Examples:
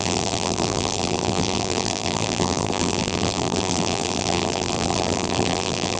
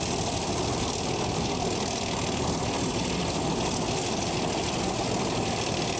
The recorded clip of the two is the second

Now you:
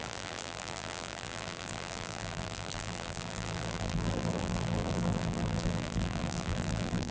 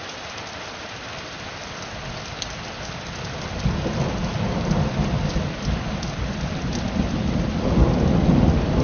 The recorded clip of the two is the second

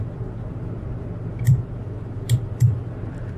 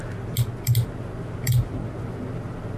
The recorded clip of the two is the second